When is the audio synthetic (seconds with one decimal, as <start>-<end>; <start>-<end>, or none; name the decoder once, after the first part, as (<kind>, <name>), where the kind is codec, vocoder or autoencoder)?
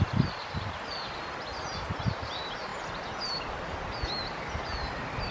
none